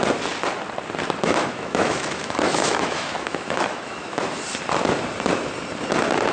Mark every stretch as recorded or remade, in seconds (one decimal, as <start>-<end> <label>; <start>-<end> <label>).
0.0-1.4 recorded; 1.4-4.4 remade; 4.4-6.3 recorded